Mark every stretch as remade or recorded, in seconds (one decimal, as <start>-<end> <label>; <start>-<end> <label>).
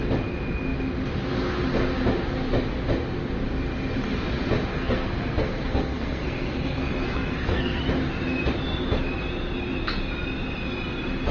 0.0-4.7 recorded; 4.7-7.8 remade; 7.8-11.3 recorded